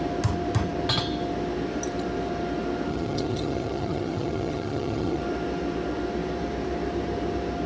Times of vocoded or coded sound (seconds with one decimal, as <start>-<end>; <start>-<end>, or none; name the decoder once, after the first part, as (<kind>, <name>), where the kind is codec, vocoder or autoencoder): 2.9-5.2 (vocoder, HiFi-GAN)